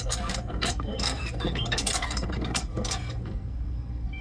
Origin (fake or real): fake